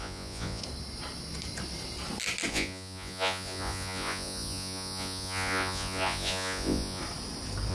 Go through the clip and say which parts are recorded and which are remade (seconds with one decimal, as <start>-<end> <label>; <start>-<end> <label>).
0.0-0.6 remade; 0.6-2.5 recorded; 2.5-7.0 remade; 7.0-7.7 recorded